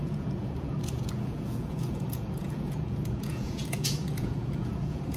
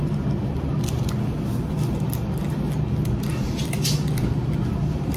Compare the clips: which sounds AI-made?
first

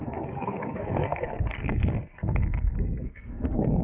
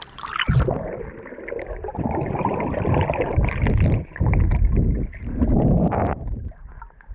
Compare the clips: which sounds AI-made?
first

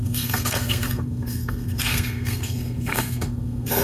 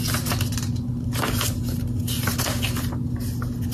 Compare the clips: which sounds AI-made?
first